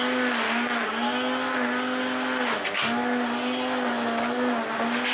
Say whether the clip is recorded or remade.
recorded